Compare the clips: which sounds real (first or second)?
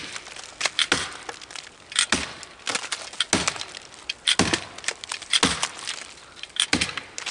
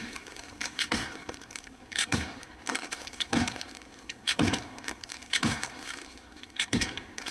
first